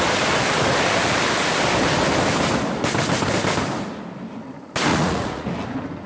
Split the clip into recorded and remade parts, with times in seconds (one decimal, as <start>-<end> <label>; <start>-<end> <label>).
0.0-4.9 recorded; 4.9-5.5 remade; 5.5-6.1 recorded